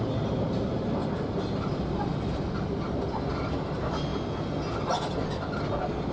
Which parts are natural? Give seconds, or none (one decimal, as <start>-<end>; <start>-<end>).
1.0-1.7; 2.1-3.3; 4.1-6.1